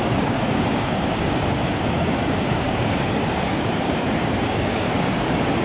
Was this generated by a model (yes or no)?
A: yes